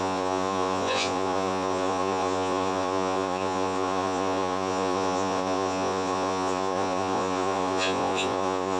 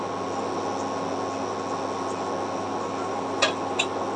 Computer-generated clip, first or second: first